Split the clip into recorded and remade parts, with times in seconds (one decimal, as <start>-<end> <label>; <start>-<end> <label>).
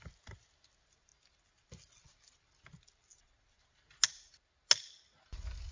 0.0-5.7 recorded